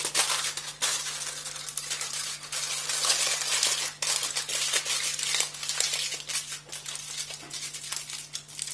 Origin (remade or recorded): recorded